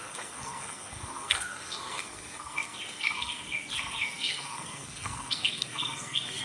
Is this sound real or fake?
fake